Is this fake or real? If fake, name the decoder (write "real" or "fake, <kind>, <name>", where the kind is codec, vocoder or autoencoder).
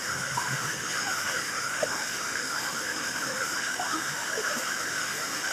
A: fake, autoencoder, DAC-VAE